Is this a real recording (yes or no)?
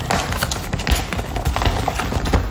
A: yes